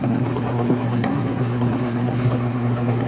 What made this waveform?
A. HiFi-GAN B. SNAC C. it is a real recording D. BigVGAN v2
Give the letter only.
B